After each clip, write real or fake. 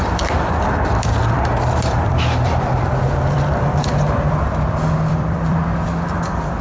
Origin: fake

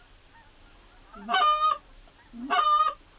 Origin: real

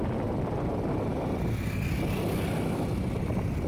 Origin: real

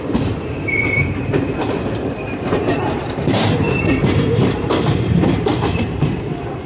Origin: fake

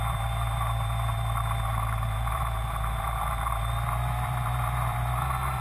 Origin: fake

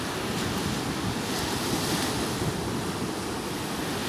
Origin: real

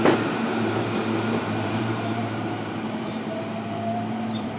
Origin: fake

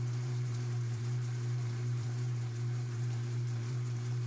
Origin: fake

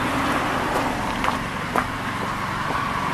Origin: real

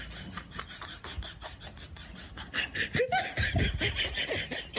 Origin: real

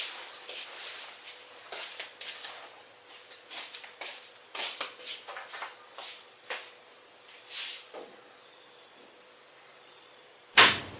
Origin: fake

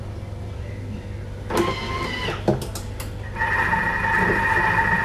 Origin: real